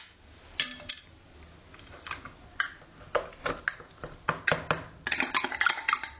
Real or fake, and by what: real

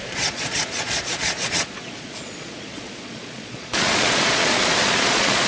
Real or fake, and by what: fake, vocoder, Vocos